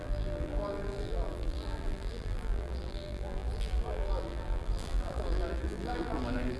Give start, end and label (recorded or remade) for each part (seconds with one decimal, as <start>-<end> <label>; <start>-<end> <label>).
0.0-6.6 remade